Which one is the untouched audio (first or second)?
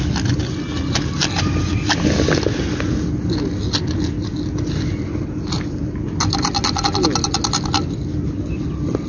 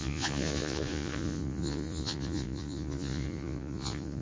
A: first